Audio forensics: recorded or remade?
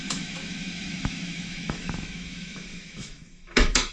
remade